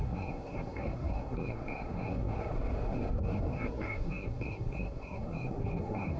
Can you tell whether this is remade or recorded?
remade